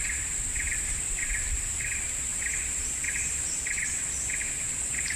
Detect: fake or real fake